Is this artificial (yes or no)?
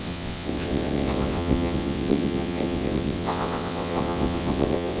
yes